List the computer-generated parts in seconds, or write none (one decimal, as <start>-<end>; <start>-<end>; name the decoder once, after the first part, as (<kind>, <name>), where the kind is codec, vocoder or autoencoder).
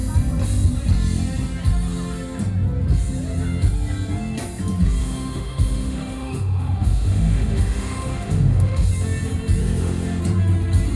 5.0-8.9 (autoencoder, DAC-VAE); 9.6-10.2